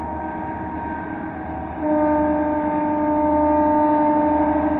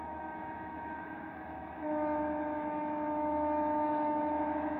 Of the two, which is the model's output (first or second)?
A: second